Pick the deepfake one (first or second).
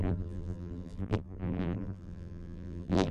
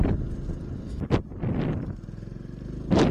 first